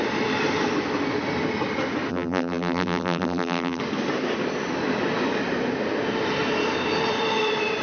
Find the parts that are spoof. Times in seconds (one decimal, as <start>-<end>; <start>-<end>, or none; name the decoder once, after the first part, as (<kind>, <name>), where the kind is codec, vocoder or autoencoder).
2.1-3.8 (vocoder, BigVGAN v2)